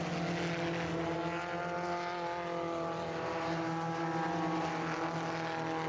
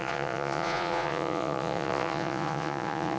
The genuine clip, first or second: first